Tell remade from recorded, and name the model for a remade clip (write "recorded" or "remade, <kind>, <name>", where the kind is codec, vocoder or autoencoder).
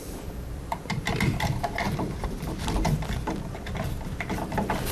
remade, vocoder, BigVGAN v2